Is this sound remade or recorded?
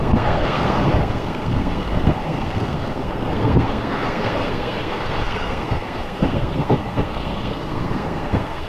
remade